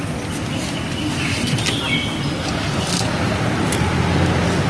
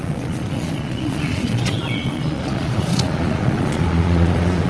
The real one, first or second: first